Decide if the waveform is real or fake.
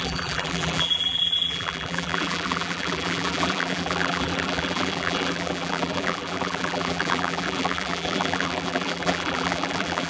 fake